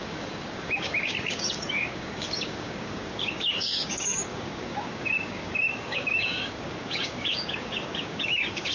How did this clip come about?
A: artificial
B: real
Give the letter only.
A